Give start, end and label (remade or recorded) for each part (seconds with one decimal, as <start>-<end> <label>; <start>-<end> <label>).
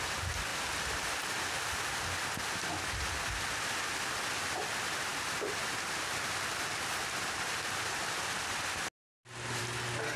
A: 0.0-10.2 recorded